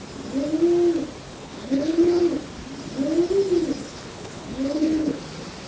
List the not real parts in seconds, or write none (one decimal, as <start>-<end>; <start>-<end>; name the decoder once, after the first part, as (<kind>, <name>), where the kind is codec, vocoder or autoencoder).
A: 1.3-2.2 (codec, HILCodec); 3.8-5.2